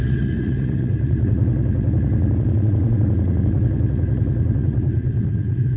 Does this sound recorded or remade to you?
remade